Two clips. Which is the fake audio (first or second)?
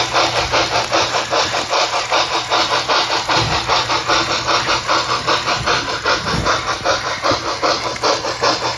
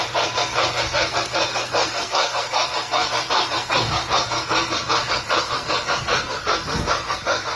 second